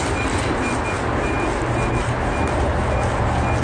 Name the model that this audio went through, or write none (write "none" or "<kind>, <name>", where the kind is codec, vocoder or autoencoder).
none